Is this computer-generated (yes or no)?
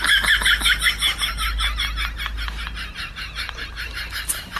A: no